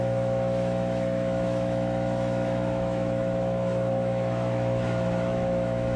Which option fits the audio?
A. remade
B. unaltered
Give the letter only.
A